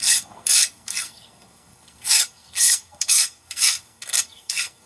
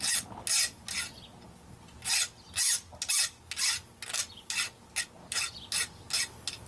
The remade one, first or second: first